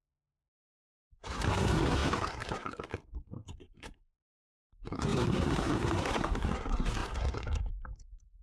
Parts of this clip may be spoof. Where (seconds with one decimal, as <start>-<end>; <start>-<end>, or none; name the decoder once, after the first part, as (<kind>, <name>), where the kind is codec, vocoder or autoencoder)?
0.0-8.4 (codec, SNAC)